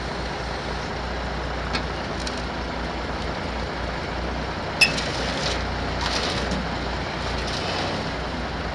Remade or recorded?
recorded